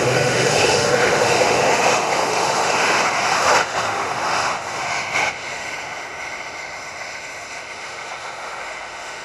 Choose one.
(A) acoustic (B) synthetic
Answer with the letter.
B